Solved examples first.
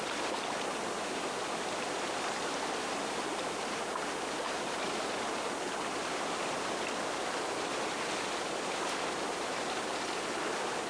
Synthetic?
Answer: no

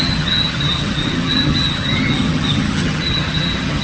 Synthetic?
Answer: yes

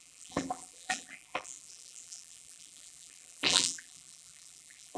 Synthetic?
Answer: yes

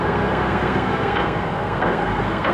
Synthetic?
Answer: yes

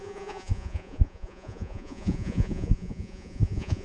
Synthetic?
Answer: yes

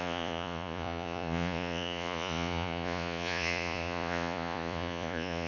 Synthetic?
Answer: yes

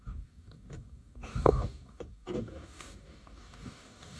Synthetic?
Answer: yes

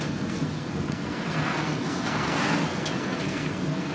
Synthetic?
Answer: yes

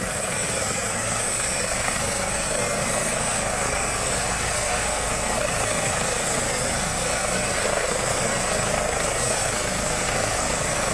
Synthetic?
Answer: yes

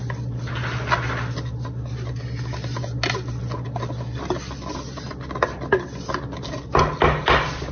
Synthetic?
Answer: no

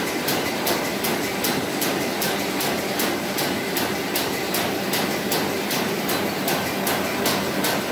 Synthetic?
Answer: no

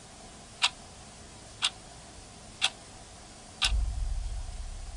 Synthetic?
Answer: no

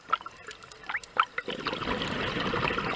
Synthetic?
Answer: no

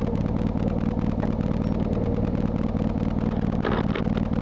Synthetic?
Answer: no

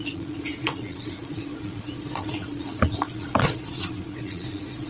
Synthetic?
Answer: yes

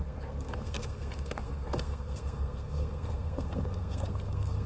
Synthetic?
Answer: yes